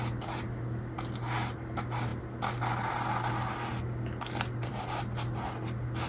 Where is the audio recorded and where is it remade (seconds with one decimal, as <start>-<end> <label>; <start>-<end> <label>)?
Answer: 0.0-6.1 recorded